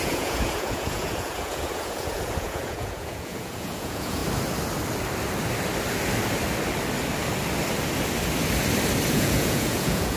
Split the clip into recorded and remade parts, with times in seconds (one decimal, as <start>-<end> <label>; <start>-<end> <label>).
0.0-4.2 remade; 4.2-9.1 recorded; 9.1-10.2 remade